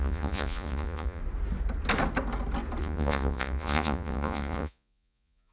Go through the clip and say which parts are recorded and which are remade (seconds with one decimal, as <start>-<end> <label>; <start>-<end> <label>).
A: 0.0-1.2 remade; 1.2-2.8 recorded; 2.8-5.5 remade